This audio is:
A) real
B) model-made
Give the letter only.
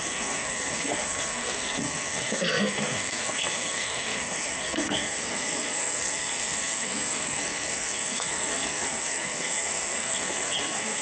B